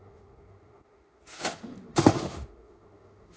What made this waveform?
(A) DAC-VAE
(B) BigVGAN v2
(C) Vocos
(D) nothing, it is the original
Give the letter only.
A